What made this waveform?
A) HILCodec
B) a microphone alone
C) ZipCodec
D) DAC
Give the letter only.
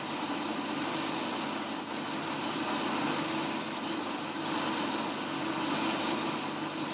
B